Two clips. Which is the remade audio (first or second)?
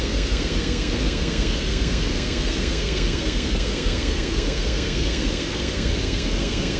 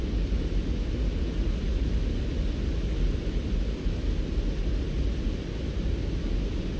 first